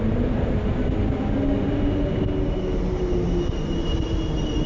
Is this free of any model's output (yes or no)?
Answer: yes